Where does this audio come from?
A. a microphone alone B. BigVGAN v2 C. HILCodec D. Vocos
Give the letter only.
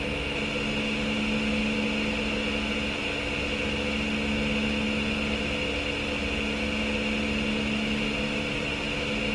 A